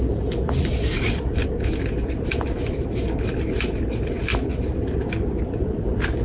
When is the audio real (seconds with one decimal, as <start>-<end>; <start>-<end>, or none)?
0.0-6.2